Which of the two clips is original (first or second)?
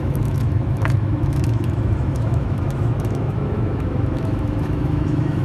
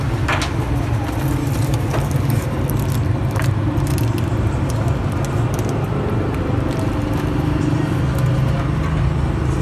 second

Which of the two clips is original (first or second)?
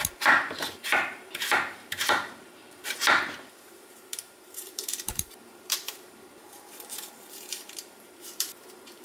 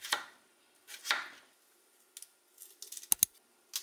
second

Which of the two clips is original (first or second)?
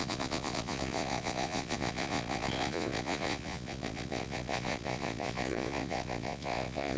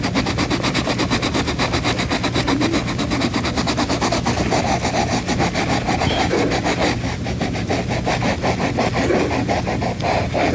second